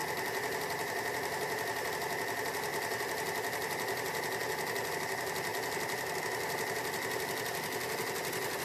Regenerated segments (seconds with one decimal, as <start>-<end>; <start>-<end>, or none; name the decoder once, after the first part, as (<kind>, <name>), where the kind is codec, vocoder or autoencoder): 0.0-1.9 (vocoder, BigVGAN v2); 2.7-4.9; 5.5-6.2